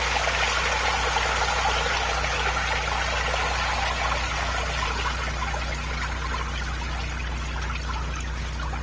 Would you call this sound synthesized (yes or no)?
no